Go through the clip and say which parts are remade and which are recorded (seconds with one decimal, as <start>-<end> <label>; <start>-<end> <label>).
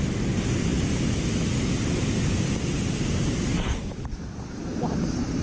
0.0-5.4 remade